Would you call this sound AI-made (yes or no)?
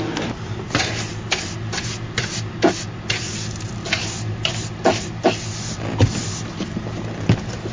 no